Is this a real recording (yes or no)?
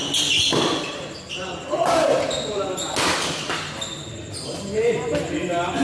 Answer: yes